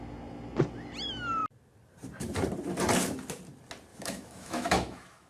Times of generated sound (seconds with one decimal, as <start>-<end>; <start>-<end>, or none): 3.9-5.3